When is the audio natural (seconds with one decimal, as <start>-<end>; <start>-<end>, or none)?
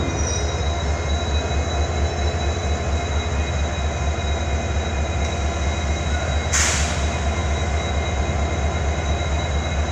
0.0-9.9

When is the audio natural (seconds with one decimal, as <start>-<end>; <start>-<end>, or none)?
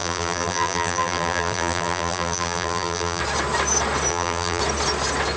3.2-4.1; 4.6-5.4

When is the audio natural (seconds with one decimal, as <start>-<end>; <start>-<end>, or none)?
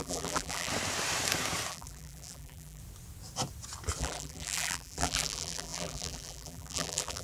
0.7-1.7; 2.8-4.0